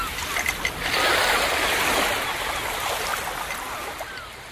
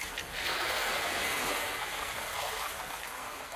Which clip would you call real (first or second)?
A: first